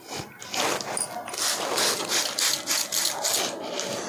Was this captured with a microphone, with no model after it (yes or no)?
yes